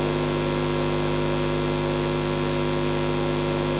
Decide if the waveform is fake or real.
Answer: real